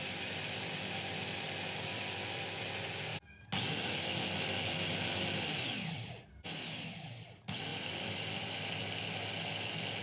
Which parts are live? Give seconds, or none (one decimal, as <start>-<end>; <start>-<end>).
0.0-7.7; 8.8-10.0